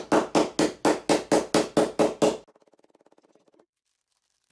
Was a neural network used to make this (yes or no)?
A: no